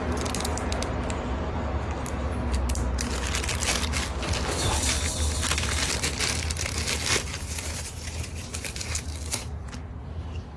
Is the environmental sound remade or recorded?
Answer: recorded